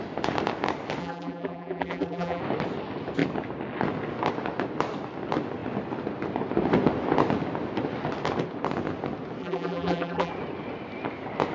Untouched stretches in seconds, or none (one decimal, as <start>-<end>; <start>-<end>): 0.0-1.0; 2.4-9.4; 10.3-11.5

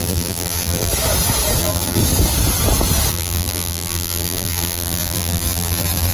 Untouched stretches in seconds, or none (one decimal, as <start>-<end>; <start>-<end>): 0.9-1.6; 2.0-3.1

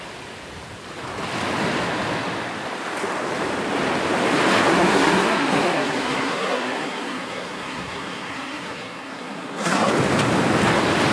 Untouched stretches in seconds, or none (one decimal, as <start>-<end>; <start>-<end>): 0.0-4.7; 9.9-11.1

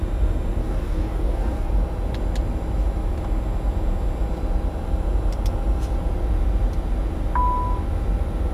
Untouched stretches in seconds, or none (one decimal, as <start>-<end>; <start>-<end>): 0.0-0.6; 1.7-8.5

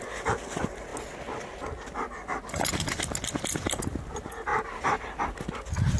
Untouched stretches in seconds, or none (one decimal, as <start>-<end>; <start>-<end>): 0.0-6.0

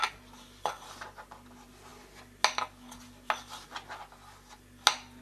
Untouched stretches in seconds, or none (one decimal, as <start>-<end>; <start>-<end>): 0.0-5.2